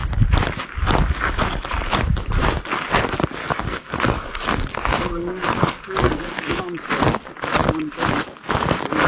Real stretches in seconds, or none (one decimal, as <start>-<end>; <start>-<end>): 0.0-3.4; 6.6-9.1